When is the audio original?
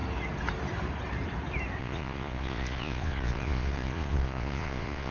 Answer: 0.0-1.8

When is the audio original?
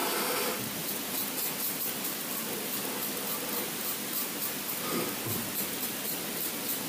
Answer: 0.0-6.9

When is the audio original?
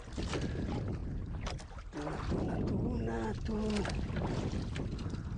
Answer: 0.0-5.4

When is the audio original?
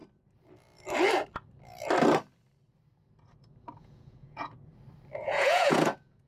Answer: 0.0-3.8; 4.7-5.2